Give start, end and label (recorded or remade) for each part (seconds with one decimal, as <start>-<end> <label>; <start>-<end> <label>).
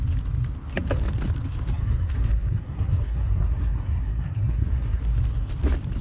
0.0-1.8 recorded; 1.8-5.0 remade; 5.0-6.0 recorded